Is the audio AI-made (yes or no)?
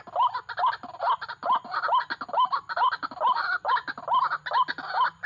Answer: no